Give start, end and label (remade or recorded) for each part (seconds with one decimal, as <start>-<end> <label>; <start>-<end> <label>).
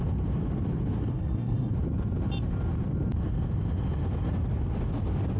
0.0-1.1 recorded; 1.1-1.7 remade; 1.7-5.4 recorded